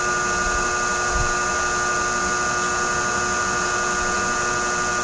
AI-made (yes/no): no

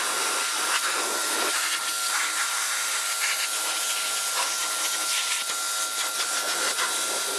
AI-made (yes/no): no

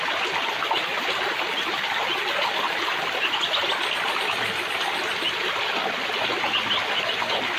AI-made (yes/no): no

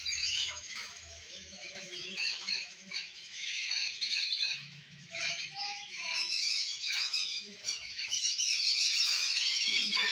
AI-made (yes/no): yes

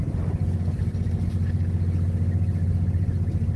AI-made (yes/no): no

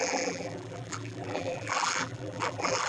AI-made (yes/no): yes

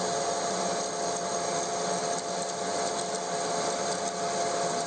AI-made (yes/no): no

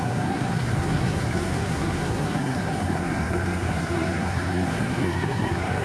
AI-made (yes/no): yes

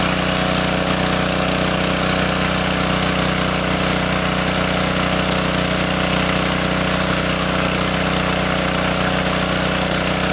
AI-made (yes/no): no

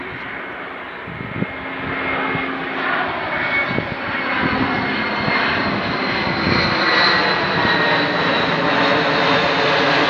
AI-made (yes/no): no